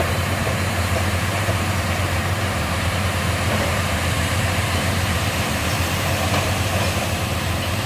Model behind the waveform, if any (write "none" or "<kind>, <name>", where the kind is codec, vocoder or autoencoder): vocoder, BigVGAN v2